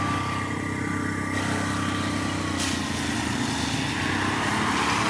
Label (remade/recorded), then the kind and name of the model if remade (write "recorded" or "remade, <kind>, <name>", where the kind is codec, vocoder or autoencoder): recorded